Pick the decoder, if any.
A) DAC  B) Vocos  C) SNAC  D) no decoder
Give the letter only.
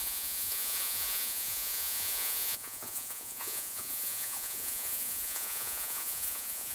B